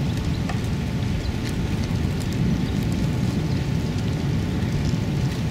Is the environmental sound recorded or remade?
recorded